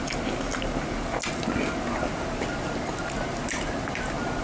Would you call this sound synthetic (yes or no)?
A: no